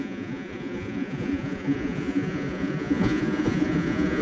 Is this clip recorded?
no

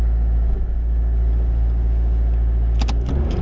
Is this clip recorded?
yes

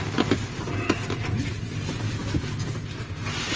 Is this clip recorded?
yes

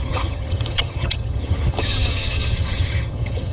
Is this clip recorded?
no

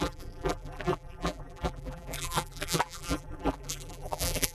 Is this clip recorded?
no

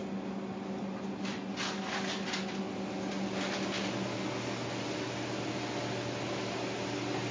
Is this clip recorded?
yes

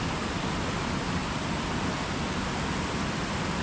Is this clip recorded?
yes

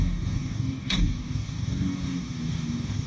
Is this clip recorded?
no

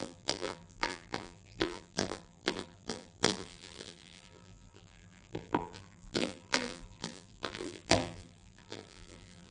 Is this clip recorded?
no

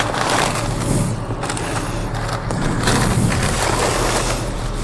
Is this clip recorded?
yes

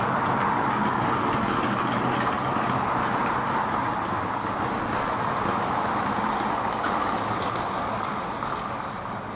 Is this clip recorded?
yes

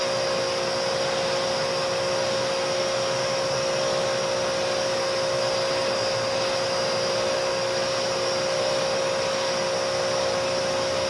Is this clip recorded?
yes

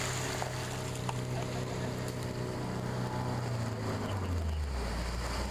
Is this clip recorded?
yes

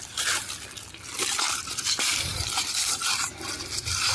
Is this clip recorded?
no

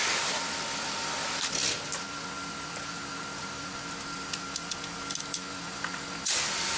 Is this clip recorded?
yes